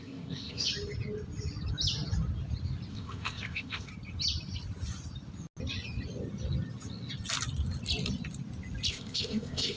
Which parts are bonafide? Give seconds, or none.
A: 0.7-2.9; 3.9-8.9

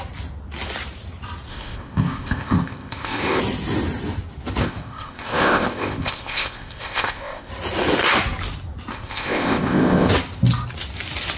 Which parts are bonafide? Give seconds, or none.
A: 0.0-1.5; 3.4-4.6; 7.5-8.9; 10.1-11.4

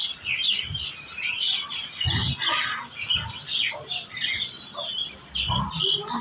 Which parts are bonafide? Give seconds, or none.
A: 0.0-6.2

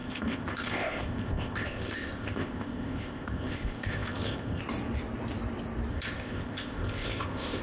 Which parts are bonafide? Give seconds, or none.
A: 4.6-5.9

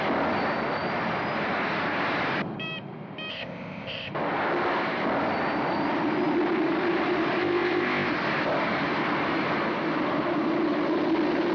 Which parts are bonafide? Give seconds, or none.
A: 0.0-3.3; 4.1-7.4; 8.1-11.5